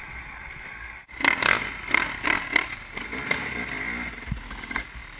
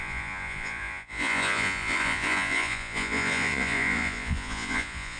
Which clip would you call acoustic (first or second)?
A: first